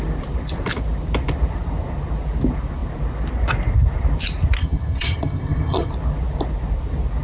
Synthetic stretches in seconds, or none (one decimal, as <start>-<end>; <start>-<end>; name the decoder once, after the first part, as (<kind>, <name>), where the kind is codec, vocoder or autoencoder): 4.6-5.9 (vocoder, HiFi-GAN)